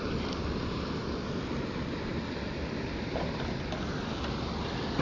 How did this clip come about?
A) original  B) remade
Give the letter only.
A